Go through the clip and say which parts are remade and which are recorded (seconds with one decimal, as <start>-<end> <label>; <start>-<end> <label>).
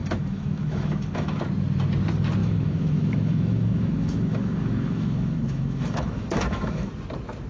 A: 0.0-1.4 remade; 1.4-2.4 recorded; 2.4-6.9 remade; 6.9-7.5 recorded